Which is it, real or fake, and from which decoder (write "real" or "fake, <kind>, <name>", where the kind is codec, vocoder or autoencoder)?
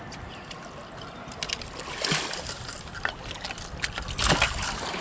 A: real